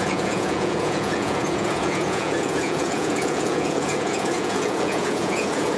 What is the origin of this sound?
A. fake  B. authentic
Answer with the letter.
A